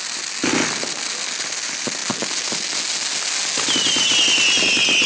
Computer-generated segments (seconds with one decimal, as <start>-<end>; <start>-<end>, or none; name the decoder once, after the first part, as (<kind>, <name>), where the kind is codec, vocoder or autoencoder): none